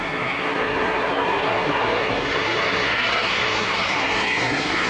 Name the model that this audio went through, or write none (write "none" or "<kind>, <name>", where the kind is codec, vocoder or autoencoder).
codec, SNAC